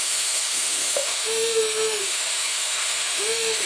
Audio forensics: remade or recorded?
remade